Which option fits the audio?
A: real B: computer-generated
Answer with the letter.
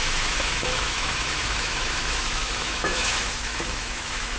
B